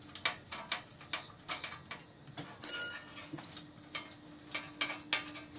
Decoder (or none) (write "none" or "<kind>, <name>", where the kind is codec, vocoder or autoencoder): none